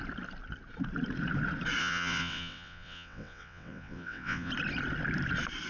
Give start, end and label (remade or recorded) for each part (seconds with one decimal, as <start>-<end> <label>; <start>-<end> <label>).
0.0-1.8 recorded; 1.8-4.5 remade; 4.5-5.7 recorded